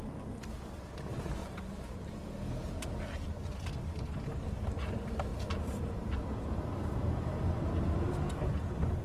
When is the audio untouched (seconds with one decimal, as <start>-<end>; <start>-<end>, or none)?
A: 0.0-1.4; 2.1-5.3; 8.1-9.0